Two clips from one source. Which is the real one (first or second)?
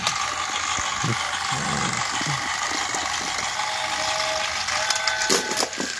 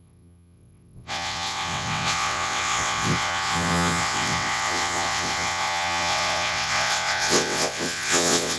first